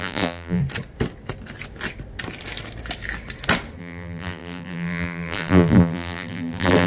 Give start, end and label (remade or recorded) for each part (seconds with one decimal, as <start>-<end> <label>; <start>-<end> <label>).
0.0-0.6 remade; 0.6-3.8 recorded; 3.8-6.9 remade